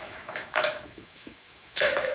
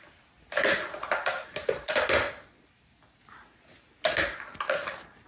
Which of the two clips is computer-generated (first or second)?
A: first